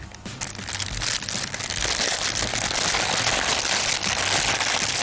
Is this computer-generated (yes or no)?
no